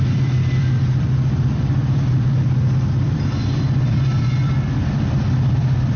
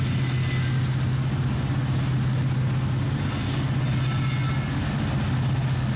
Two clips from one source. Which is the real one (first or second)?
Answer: second